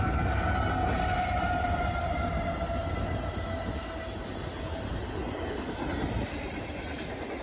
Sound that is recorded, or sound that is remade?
recorded